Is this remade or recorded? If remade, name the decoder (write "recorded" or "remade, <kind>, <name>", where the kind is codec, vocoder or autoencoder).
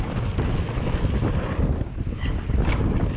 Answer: recorded